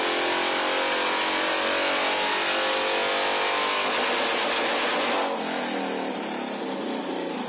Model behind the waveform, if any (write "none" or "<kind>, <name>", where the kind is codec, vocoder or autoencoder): none